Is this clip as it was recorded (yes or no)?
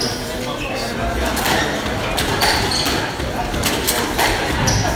yes